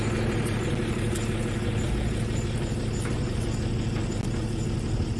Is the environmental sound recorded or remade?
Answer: recorded